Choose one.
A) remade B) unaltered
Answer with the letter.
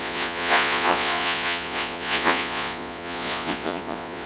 A